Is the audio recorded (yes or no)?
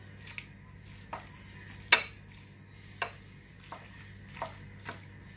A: yes